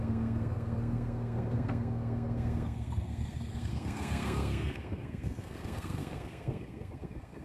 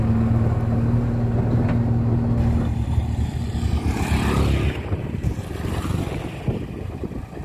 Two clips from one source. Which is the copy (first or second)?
first